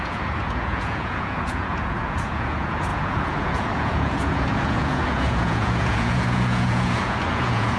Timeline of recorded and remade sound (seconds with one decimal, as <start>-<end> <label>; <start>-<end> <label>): 0.0-7.8 remade